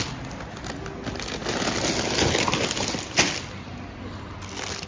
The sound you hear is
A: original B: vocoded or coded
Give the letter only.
A